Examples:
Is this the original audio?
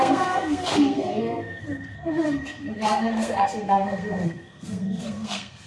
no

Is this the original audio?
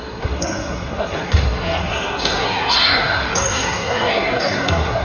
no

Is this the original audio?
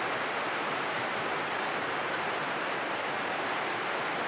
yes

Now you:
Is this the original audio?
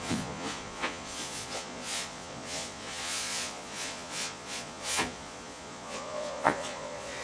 no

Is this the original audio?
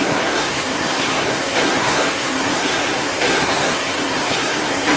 no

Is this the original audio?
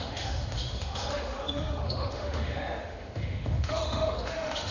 no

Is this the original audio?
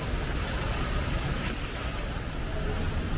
yes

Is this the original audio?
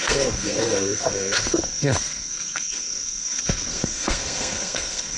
no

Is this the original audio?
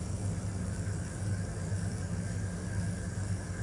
no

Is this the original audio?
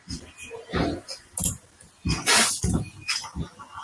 yes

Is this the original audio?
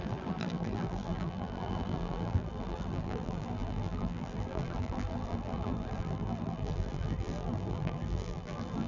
no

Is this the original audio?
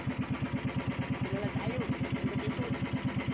yes